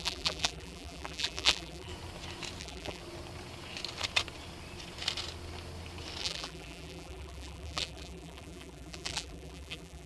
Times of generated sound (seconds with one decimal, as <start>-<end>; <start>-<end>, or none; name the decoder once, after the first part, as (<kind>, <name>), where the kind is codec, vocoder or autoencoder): 0.0-1.9 (vocoder, BigVGAN v2); 2.6-3.0; 6.2-10.1